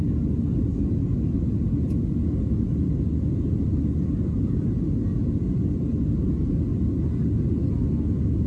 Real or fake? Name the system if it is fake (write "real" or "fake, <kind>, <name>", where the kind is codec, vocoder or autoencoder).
real